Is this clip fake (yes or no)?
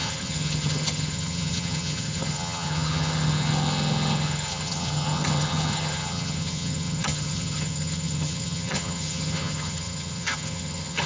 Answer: yes